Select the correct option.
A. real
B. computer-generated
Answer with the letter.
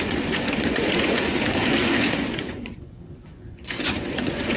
B